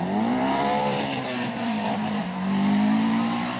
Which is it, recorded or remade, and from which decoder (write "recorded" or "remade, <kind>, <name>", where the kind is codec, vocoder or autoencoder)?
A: remade, vocoder, BigVGAN v2